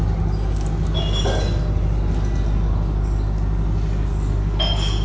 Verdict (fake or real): real